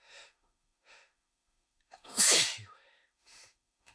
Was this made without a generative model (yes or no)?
no